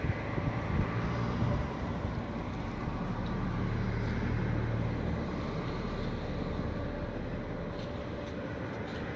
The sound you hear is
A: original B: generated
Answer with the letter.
A